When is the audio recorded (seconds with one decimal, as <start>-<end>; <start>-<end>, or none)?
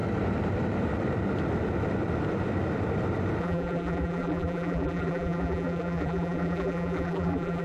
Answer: 0.0-3.4